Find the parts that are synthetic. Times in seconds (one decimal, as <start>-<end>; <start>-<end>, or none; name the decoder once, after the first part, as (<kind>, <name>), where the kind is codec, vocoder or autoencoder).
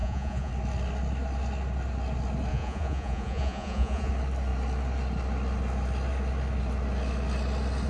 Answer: 0.0-0.5 (vocoder, Vocos); 2.5-4.1